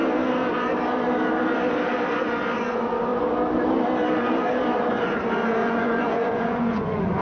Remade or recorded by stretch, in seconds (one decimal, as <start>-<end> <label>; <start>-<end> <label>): 0.0-5.6 recorded; 5.6-7.2 remade